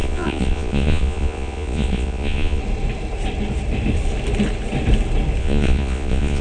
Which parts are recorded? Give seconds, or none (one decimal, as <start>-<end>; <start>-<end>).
2.6-5.4